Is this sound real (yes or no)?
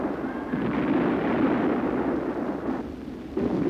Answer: yes